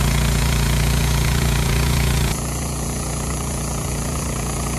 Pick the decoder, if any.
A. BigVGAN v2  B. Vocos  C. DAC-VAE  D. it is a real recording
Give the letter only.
B